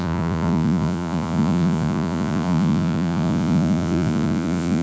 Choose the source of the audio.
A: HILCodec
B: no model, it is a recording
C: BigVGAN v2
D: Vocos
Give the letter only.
D